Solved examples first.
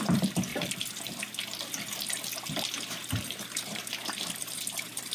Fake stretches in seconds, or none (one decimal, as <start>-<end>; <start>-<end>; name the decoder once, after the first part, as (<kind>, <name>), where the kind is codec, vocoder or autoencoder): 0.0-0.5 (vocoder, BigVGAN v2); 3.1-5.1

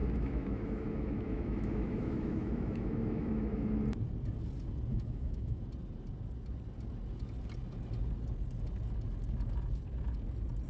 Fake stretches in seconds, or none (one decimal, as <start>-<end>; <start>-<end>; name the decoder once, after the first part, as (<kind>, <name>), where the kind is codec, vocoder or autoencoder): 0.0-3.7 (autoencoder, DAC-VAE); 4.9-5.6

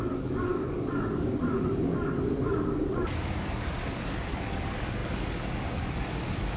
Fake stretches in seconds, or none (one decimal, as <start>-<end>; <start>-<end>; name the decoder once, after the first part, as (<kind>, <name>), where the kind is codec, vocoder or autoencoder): 0.0-6.6 (codec, DAC)

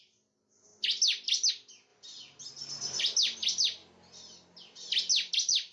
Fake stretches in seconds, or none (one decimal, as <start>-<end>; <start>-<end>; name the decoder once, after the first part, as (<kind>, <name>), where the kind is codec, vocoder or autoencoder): none

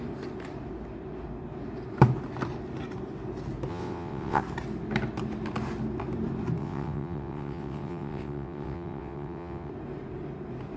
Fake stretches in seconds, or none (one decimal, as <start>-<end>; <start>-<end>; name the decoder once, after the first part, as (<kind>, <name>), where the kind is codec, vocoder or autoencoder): 3.7-4.4 (vocoder, WaveNeXt); 6.6-9.7

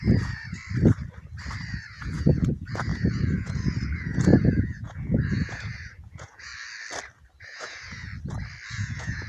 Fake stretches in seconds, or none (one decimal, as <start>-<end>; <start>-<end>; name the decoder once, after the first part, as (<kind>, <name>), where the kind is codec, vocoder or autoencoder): 0.0-0.6 (vocoder, Vocos); 1.7-6.5; 7.4-8.1; 8.7-9.3

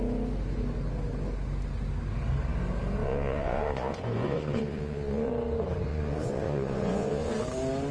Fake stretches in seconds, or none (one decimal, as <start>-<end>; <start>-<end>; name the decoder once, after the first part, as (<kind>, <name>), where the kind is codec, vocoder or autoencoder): 3.0-5.3 (vocoder, Vocos); 5.9-7.3